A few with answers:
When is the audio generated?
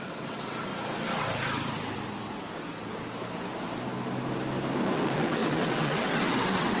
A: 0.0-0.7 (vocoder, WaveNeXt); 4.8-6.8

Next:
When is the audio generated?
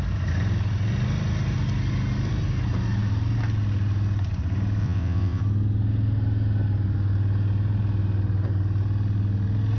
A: 4.8-5.4 (vocoder, WaveNeXt)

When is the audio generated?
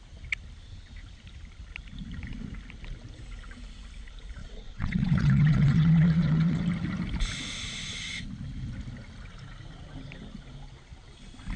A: 4.4-6.6 (vocoder, WaveNeXt)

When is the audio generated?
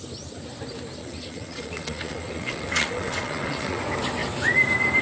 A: 1.0-3.8 (vocoder, WaveNeXt)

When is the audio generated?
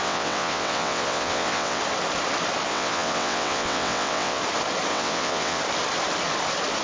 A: 0.0-1.8 (vocoder, WaveNeXt); 2.7-4.4; 4.9-5.6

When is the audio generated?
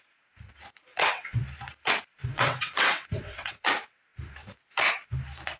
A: 0.9-1.4 (vocoder, WaveNeXt); 2.2-3.6